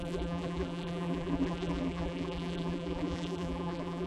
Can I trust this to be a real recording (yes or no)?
no